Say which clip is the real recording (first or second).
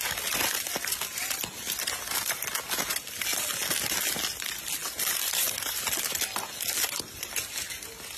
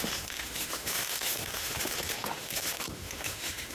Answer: first